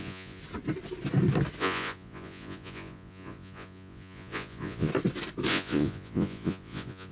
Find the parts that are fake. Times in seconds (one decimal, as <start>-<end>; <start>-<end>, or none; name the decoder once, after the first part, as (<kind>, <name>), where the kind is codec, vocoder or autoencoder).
0.0-0.4 (vocoder, Vocos); 1.6-4.9; 5.5-7.1